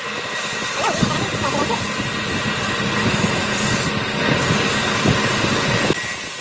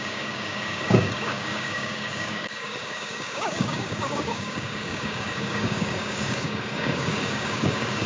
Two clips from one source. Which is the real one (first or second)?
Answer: first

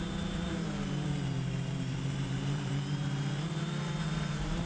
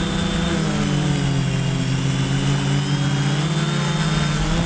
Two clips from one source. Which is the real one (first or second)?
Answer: second